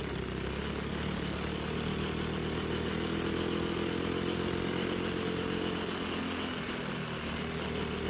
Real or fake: real